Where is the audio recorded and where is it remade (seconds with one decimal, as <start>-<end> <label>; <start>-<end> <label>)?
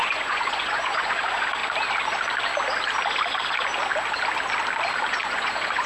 0.0-1.6 remade; 1.6-5.1 recorded; 5.1-5.9 remade